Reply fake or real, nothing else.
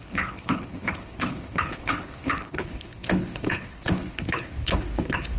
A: fake